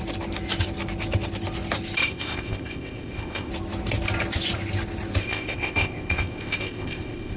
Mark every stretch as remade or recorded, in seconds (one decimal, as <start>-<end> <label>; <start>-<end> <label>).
0.0-2.0 recorded; 2.0-3.5 remade; 3.5-5.2 recorded; 5.2-7.4 remade